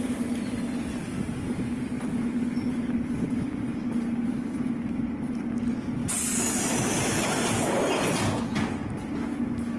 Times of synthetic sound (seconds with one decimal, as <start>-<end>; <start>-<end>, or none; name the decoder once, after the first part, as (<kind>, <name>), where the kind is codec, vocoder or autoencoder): none